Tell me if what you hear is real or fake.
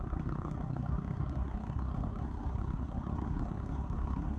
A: fake